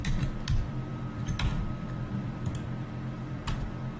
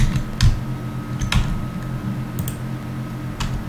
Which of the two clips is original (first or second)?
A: second